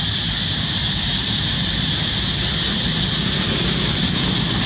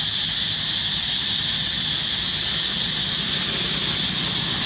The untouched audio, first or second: second